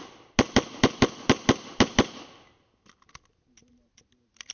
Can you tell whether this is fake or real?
real